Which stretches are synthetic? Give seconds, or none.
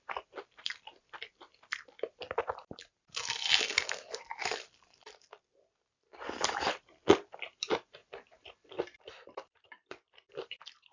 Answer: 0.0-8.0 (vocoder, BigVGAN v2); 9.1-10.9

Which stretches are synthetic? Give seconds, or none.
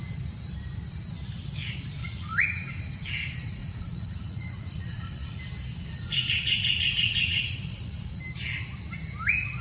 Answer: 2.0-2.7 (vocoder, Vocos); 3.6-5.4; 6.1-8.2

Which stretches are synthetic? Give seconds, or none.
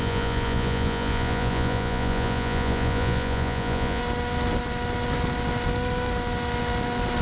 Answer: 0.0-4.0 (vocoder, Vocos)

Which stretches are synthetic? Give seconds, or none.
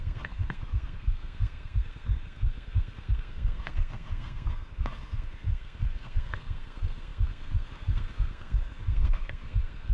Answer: 0.0-9.9 (codec, SNAC)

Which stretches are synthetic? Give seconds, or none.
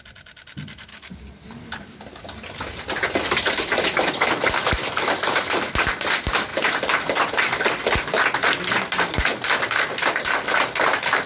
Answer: 0.9-2.2 (codec, DAC)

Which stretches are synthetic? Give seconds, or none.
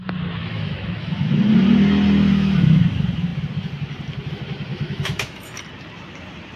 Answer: 0.4-1.3 (autoencoder, DAC-VAE); 2.3-2.8; 4.7-5.6